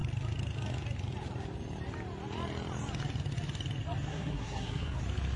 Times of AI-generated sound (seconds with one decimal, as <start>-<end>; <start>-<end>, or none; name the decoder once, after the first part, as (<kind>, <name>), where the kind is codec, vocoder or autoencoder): 4.1-5.0 (codec, SNAC)